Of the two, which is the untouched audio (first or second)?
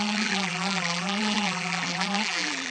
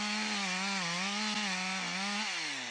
second